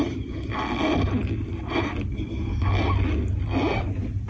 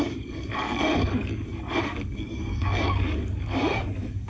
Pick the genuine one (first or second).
first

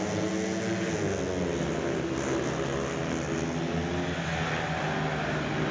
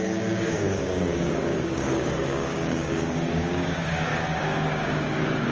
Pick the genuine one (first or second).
first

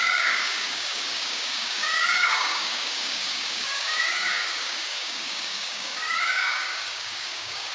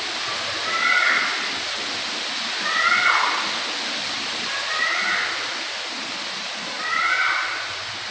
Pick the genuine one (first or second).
second